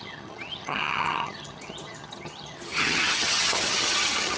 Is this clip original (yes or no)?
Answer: no